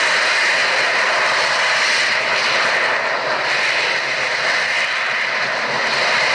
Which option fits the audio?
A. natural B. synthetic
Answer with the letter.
A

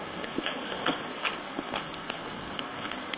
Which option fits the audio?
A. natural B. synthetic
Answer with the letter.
B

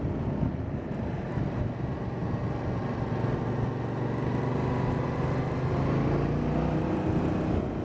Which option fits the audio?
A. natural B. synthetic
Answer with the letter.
A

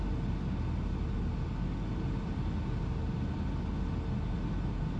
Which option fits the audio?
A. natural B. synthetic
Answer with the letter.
A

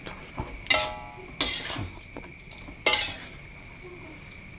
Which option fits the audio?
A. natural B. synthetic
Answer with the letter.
A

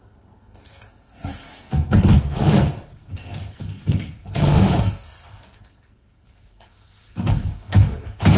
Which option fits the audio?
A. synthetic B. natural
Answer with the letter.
A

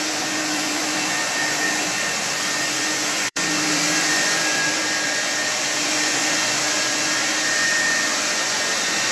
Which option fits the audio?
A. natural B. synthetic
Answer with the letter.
B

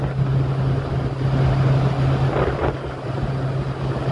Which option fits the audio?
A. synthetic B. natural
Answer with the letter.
B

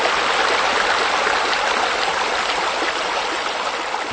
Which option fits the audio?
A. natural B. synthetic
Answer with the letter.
A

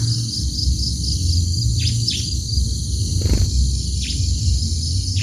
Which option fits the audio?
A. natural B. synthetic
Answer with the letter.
A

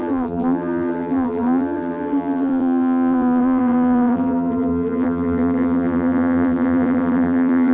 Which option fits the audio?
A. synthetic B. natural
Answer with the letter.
A